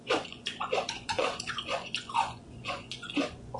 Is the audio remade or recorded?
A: remade